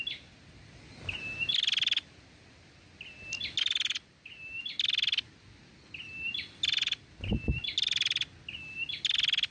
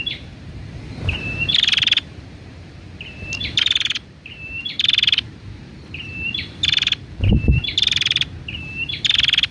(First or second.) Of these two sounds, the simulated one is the second